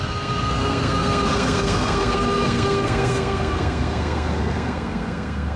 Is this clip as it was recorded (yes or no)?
no